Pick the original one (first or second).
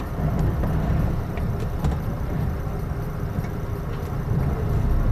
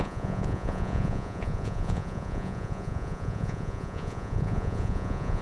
first